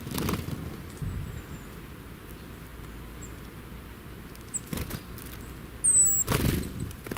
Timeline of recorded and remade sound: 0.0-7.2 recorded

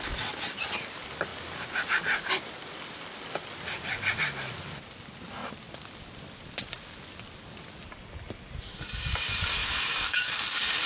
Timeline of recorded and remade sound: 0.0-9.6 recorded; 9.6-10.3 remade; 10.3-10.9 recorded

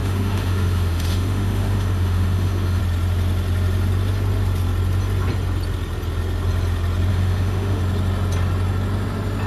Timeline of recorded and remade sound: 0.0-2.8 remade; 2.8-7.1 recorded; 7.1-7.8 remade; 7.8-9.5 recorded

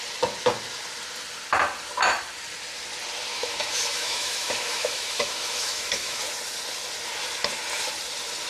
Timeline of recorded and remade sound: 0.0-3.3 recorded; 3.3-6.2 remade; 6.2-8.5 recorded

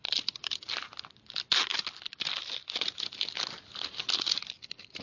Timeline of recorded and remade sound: 0.0-5.0 recorded